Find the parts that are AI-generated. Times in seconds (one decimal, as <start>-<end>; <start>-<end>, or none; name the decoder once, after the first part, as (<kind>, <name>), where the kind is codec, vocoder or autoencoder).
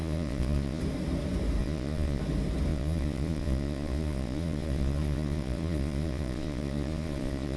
0.0-0.8 (vocoder, Vocos); 1.6-2.2; 2.7-7.6